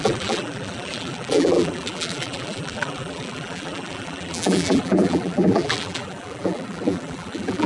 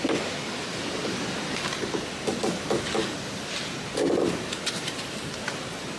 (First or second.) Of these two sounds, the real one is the second